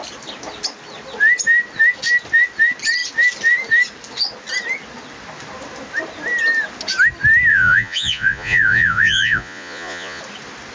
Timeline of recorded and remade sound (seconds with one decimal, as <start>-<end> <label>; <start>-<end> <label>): 0.0-7.5 recorded; 7.5-10.2 remade; 10.2-10.7 recorded